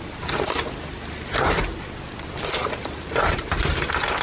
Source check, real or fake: real